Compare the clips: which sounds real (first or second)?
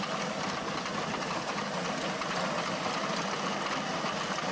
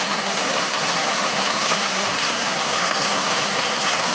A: first